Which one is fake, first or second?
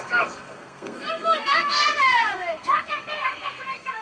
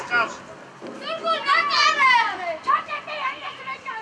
first